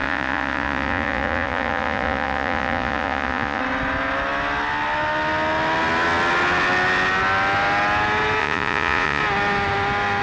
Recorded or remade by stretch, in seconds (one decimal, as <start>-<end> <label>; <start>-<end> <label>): 0.0-3.6 remade; 3.6-8.4 recorded; 8.4-9.2 remade; 9.2-10.2 recorded